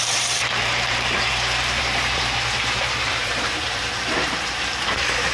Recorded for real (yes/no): no